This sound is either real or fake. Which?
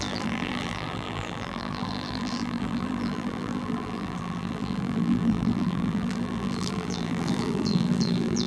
fake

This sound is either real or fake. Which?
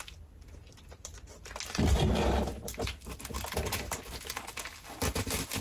real